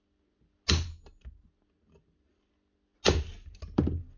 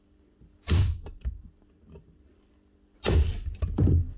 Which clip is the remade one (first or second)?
second